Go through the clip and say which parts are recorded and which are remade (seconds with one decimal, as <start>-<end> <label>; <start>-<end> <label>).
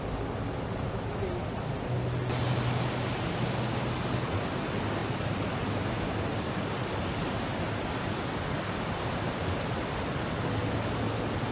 0.0-11.5 recorded